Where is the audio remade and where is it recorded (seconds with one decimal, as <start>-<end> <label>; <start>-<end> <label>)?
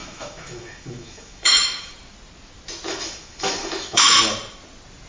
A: 0.0-1.9 remade; 1.9-2.9 recorded; 2.9-4.2 remade; 4.2-5.1 recorded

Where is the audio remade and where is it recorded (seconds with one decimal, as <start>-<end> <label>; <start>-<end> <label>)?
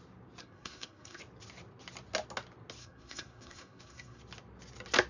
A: 0.0-0.4 recorded; 0.4-1.2 remade; 1.2-2.8 recorded; 2.8-4.2 remade; 4.2-5.1 recorded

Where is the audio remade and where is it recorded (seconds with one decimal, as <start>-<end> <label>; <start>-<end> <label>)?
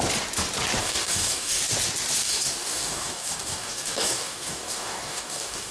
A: 0.0-0.8 recorded; 0.8-1.6 remade; 1.6-2.2 recorded; 2.2-5.7 remade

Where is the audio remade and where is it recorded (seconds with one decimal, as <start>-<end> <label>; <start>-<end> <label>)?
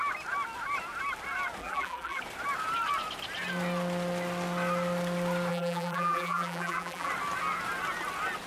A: 0.0-1.6 recorded; 1.6-2.2 remade; 2.2-5.5 recorded; 5.5-7.1 remade; 7.1-8.5 recorded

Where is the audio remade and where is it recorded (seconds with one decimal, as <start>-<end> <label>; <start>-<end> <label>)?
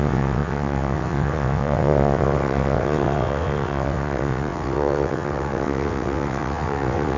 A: 0.0-7.2 remade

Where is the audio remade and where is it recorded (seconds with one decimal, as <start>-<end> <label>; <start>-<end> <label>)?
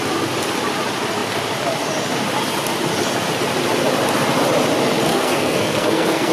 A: 0.0-5.1 recorded; 5.1-6.3 remade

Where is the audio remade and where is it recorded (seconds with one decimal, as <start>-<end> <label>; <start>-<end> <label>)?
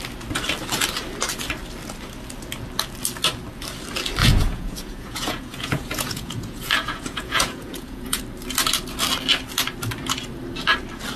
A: 0.0-4.2 recorded; 4.2-8.2 remade; 8.2-11.2 recorded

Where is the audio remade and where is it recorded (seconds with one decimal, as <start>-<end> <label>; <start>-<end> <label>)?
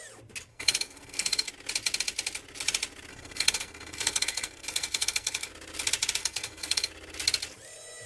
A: 0.0-0.5 recorded; 0.5-1.5 remade; 1.5-3.1 recorded; 3.1-5.5 remade; 5.5-6.2 recorded; 6.2-6.9 remade; 6.9-8.1 recorded